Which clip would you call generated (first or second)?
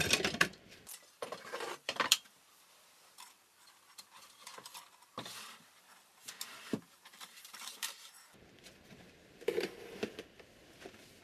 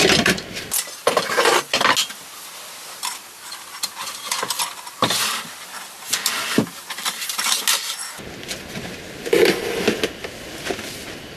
first